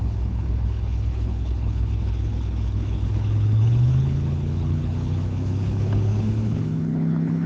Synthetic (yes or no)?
yes